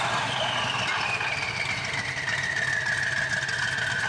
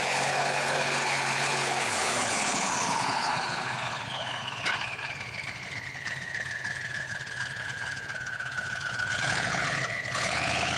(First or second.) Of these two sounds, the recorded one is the first